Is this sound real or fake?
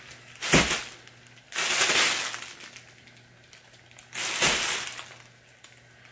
real